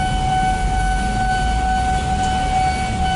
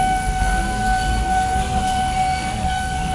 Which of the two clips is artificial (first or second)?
second